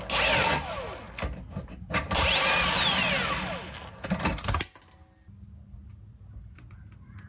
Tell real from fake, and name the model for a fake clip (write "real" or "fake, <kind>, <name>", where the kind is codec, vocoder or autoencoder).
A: real